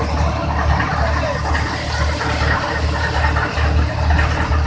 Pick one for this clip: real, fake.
real